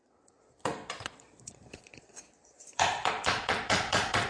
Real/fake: fake